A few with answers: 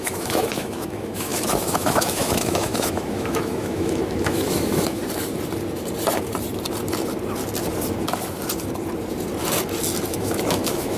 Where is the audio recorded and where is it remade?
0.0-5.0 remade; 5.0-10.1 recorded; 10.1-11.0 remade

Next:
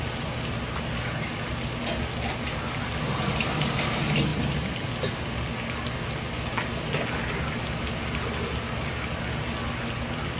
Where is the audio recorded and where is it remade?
0.0-10.4 recorded

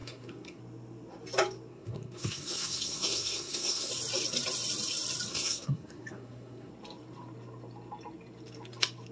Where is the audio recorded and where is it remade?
0.0-0.6 remade; 0.6-1.7 recorded; 1.7-3.9 remade; 3.9-5.3 recorded; 5.3-6.7 remade; 6.7-9.1 recorded

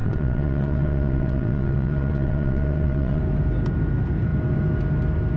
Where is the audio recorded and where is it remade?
0.0-3.2 remade; 3.2-5.4 recorded